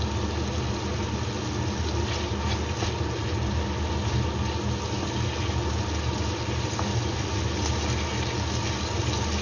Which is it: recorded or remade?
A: recorded